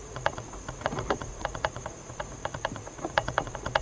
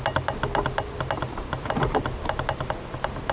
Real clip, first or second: second